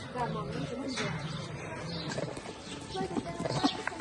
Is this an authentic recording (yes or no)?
yes